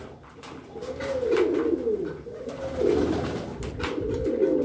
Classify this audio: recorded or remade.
recorded